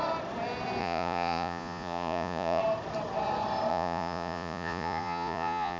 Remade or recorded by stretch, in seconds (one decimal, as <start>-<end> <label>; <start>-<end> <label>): 0.0-0.8 recorded; 0.8-2.6 remade; 2.6-3.7 recorded; 3.7-5.8 remade